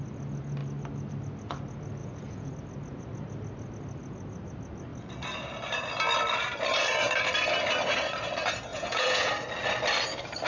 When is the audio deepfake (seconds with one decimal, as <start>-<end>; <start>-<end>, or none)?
2.0-2.5; 8.7-9.3